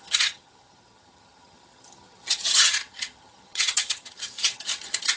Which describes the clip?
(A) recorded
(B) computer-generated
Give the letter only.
B